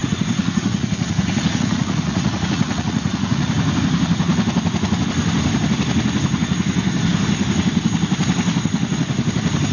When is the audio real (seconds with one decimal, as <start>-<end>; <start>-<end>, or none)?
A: 3.5-9.7